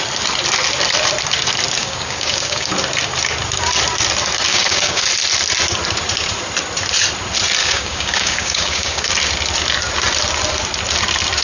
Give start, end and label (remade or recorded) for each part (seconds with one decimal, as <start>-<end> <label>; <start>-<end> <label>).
0.0-1.8 recorded; 1.8-2.7 remade; 2.7-4.5 recorded; 4.5-5.1 remade; 5.1-7.6 recorded; 7.6-9.1 remade; 9.1-11.4 recorded